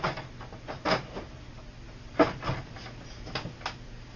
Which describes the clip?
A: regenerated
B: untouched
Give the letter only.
B